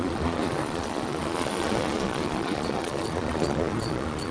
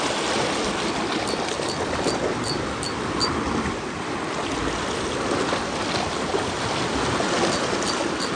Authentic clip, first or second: second